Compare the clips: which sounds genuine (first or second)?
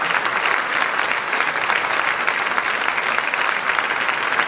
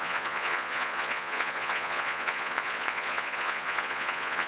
first